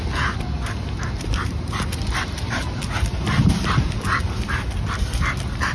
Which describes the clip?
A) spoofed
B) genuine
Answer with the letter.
B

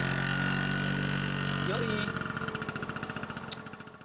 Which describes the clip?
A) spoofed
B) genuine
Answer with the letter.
B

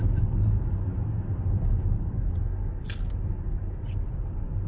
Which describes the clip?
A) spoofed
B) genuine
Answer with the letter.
B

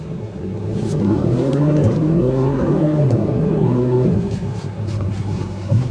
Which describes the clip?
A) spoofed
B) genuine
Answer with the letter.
A